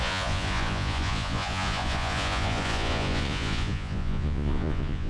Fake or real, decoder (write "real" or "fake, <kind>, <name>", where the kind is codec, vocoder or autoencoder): fake, vocoder, Vocos